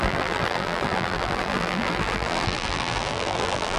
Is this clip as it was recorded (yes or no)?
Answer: no